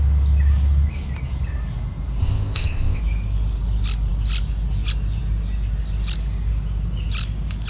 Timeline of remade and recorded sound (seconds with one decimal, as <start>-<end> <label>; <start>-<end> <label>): 0.0-2.2 recorded; 2.2-3.0 remade; 3.0-7.7 recorded